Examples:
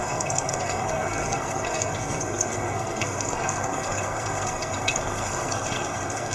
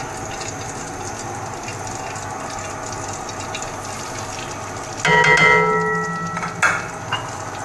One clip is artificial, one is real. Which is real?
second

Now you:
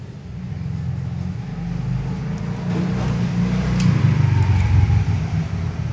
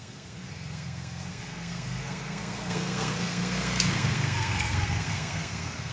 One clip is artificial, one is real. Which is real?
first